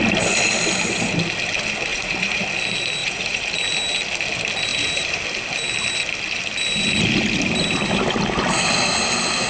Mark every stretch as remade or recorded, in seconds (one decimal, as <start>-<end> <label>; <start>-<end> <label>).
0.0-1.9 recorded; 1.9-2.4 remade; 2.4-3.0 recorded; 3.0-3.5 remade; 3.5-9.5 recorded